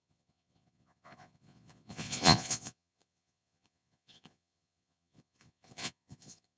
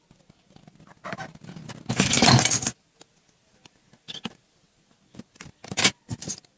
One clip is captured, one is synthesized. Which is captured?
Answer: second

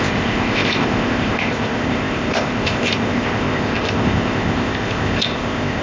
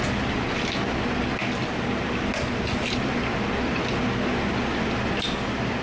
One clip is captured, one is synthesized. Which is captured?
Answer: second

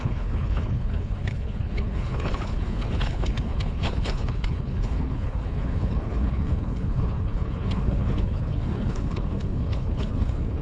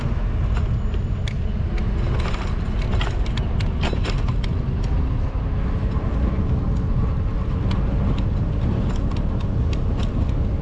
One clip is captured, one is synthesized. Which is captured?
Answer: second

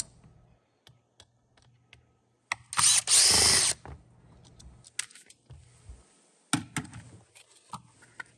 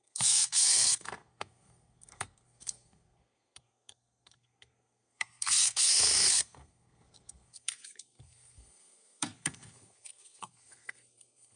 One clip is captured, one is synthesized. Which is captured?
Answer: first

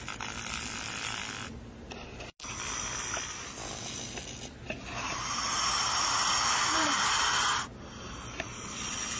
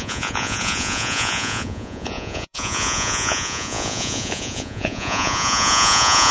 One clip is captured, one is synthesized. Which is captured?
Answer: first